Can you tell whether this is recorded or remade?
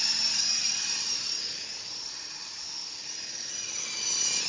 recorded